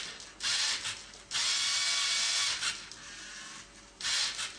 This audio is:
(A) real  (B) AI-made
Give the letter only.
A